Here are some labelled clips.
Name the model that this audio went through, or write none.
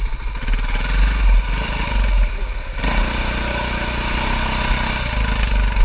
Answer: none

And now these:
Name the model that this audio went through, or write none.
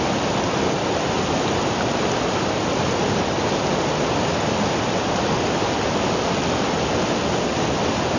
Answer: none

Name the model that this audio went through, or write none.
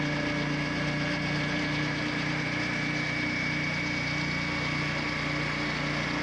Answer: none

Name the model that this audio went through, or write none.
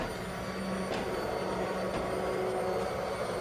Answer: none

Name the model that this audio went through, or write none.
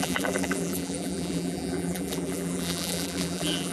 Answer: vocoder, BigVGAN v2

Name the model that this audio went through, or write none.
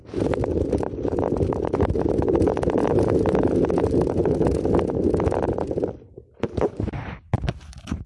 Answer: none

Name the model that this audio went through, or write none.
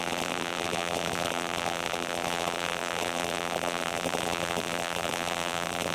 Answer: vocoder, BigVGAN v2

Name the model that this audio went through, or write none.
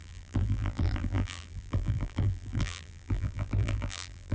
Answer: vocoder, BigVGAN v2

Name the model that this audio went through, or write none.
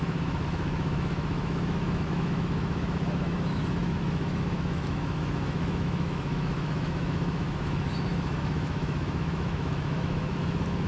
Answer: autoencoder, DAC-VAE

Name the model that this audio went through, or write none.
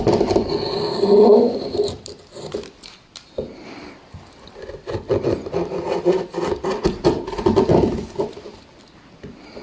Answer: vocoder, BigVGAN v2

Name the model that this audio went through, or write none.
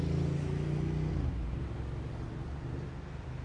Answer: none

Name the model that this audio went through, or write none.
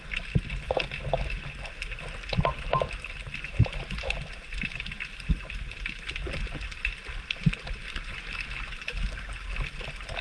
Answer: none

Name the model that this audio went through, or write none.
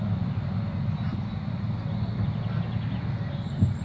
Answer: none